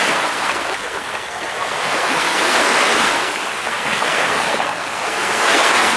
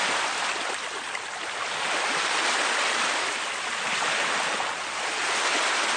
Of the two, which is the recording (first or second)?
second